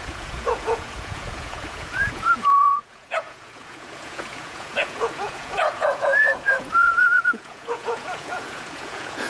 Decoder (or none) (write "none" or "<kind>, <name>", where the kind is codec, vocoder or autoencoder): vocoder, Vocos